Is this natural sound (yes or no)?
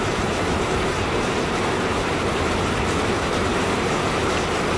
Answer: no